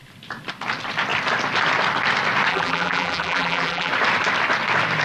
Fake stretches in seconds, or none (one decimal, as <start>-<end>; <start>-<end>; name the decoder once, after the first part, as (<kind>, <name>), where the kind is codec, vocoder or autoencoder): 2.5-3.9 (vocoder, BigVGAN v2)